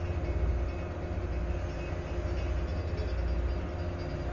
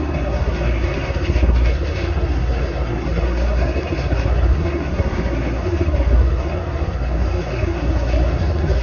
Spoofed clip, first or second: second